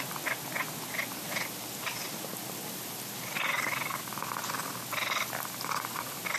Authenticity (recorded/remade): recorded